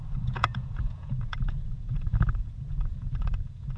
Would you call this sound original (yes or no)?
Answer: no